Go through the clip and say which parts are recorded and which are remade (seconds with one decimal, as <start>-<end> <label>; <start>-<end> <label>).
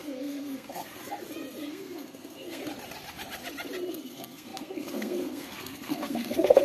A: 0.0-1.0 remade; 1.0-1.6 recorded; 1.6-2.6 remade; 2.6-3.9 recorded; 3.9-6.6 remade